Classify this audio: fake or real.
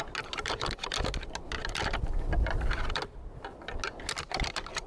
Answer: real